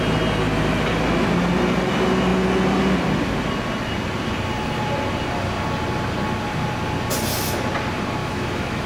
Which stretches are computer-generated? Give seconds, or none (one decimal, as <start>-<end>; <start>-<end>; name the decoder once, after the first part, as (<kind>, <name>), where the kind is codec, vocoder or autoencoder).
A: 8.2-8.9 (autoencoder, DAC-VAE)